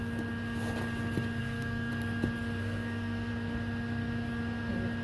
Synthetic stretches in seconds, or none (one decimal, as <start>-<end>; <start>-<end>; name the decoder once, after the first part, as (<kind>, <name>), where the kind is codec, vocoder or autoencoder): 1.4-1.9 (codec, SNAC); 2.6-3.3